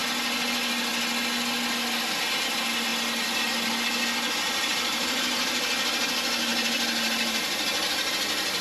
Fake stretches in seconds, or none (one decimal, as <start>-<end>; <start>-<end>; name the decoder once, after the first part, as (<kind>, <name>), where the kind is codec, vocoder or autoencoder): 4.7-5.4 (vocoder, BigVGAN v2); 6.5-8.1